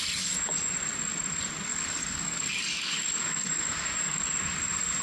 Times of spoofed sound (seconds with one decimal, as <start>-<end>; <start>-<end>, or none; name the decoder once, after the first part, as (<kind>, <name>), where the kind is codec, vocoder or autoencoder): 1.7-4.3 (codec, DAC)